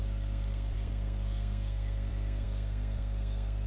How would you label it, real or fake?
fake